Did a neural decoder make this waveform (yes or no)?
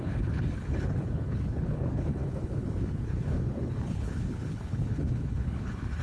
yes